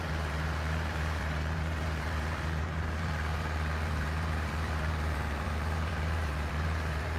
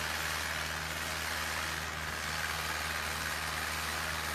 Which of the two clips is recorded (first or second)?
second